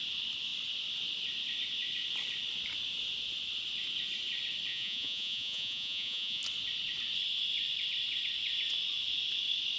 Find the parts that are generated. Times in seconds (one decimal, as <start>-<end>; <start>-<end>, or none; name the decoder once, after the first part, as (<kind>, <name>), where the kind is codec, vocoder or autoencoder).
4.7-6.4 (vocoder, Vocos)